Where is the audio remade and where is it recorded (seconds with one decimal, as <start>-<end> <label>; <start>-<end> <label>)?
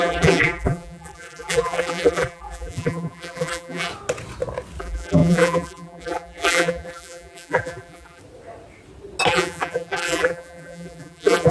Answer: 0.0-3.9 remade; 3.9-4.8 recorded; 4.8-8.2 remade; 8.2-9.3 recorded; 9.3-11.5 remade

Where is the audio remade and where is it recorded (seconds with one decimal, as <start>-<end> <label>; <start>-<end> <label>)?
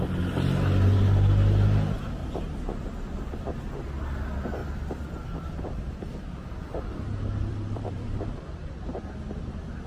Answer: 0.0-2.2 recorded; 2.2-3.6 remade; 3.6-4.6 recorded; 4.6-9.2 remade; 9.2-9.9 recorded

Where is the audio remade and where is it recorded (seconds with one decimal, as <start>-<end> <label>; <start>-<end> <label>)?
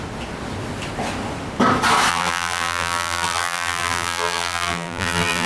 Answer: 0.0-2.1 recorded; 2.1-5.5 remade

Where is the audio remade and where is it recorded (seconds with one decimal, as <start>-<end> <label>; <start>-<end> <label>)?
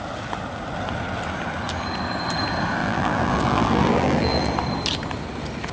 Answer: 0.0-2.8 recorded; 2.8-4.5 remade; 4.5-5.7 recorded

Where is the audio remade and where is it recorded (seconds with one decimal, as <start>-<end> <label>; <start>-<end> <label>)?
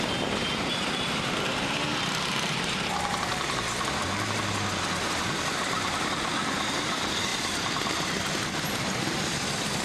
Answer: 0.0-9.8 remade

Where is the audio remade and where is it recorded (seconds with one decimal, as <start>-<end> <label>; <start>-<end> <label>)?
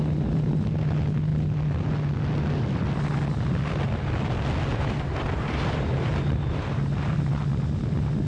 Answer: 0.0-4.7 recorded; 4.7-7.2 remade; 7.2-8.3 recorded